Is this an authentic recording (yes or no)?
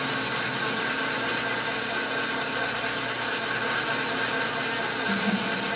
yes